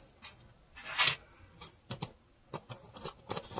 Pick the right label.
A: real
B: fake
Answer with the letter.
A